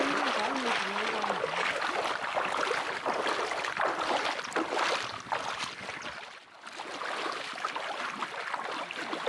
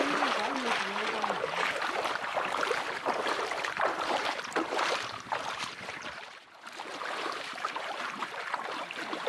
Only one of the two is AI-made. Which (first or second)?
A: second